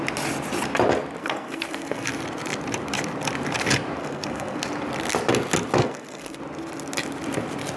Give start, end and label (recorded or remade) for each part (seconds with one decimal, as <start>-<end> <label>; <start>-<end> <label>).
0.0-1.2 recorded; 1.2-2.1 remade; 2.1-4.0 recorded; 4.0-4.6 remade; 4.6-5.8 recorded; 5.8-6.4 remade; 6.4-7.8 recorded